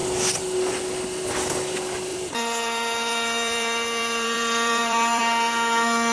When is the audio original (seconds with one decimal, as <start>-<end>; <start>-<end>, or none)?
0.0-2.1; 5.2-6.1